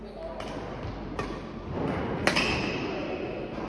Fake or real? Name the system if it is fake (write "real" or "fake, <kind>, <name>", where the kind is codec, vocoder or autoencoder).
real